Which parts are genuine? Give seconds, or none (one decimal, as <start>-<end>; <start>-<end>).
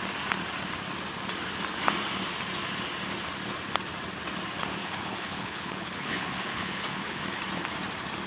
0.0-4.8; 7.2-8.3